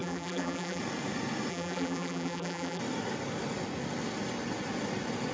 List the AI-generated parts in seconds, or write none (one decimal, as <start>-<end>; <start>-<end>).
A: 0.0-0.8; 1.5-2.8